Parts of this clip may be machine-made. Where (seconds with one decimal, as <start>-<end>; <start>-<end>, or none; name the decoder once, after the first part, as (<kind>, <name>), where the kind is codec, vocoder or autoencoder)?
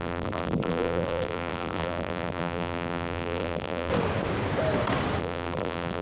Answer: 0.0-3.9 (vocoder, BigVGAN v2); 5.2-6.0